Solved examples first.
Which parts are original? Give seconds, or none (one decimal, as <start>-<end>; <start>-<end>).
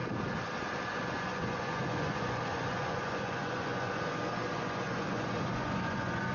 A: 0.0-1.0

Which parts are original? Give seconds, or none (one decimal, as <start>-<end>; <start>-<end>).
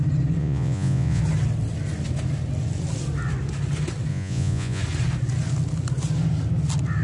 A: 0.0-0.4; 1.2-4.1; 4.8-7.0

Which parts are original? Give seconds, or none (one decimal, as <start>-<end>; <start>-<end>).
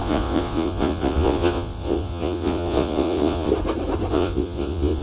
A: 3.5-4.1